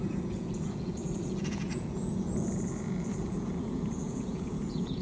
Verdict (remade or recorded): remade